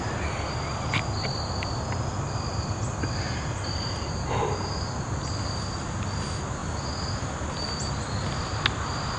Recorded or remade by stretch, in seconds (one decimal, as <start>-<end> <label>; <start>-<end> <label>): 0.0-9.2 recorded